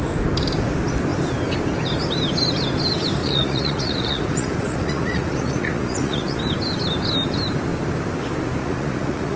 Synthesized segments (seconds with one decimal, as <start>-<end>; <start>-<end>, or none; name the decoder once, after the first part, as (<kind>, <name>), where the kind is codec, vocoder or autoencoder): 3.2-6.4 (vocoder, Vocos); 8.6-9.4